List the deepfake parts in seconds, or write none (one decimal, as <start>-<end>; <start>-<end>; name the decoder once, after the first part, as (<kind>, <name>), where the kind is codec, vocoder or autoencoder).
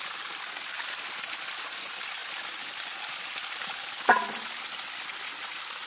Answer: none